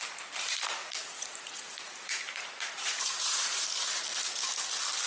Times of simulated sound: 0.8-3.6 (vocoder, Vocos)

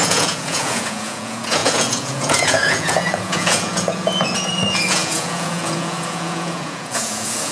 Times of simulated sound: 0.0-7.5 (vocoder, Vocos)

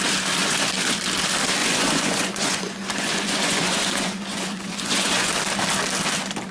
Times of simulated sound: 0.4-1.0 (vocoder, Vocos); 1.6-5.3

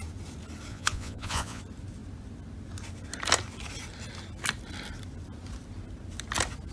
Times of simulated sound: 0.7-1.6 (vocoder, Vocos)

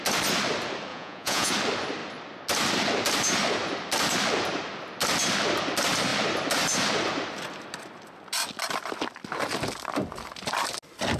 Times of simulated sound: 0.9-1.5 (vocoder, Vocos)

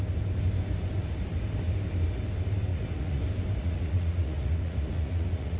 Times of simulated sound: 2.7-3.2 (vocoder, Vocos); 3.6-5.6